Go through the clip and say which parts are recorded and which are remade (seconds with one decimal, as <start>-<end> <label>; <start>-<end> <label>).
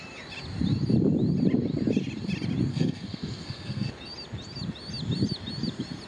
0.0-2.7 recorded; 2.7-3.9 remade; 3.9-6.1 recorded